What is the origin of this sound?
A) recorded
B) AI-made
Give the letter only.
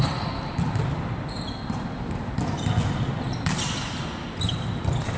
A